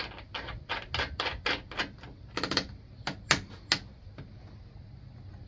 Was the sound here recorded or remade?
recorded